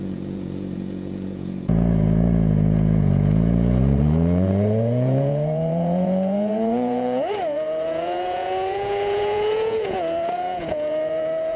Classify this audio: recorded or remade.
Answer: remade